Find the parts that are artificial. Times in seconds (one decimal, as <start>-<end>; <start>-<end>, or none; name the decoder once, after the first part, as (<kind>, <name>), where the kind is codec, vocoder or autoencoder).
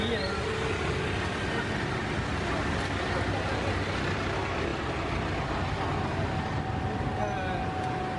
none